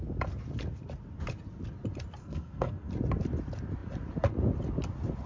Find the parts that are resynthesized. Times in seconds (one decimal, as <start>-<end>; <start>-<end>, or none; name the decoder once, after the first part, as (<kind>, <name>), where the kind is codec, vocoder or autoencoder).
2.2-2.9 (codec, SNAC)